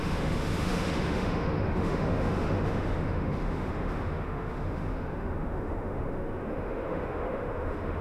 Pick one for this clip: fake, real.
fake